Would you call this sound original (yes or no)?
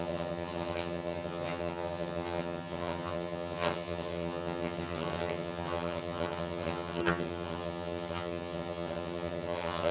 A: no